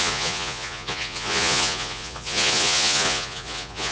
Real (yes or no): no